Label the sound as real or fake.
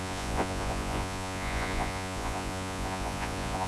fake